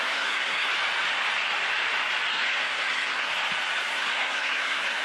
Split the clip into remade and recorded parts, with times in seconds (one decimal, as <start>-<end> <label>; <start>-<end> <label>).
0.0-0.7 remade; 0.7-2.3 recorded; 2.3-3.3 remade; 3.3-3.9 recorded; 3.9-5.0 remade